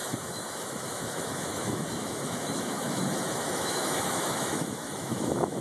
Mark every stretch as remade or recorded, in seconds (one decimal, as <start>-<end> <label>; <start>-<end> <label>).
0.0-5.6 remade